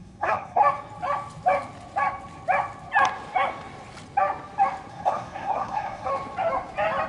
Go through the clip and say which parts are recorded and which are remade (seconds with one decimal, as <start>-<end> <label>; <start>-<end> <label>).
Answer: 0.0-0.6 remade; 0.6-4.9 recorded; 4.9-6.1 remade; 6.1-7.1 recorded